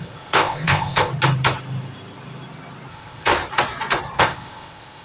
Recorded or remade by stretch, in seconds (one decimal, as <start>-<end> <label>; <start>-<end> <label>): 0.0-1.1 remade; 1.1-2.9 recorded; 2.9-3.3 remade; 3.3-4.2 recorded; 4.2-5.0 remade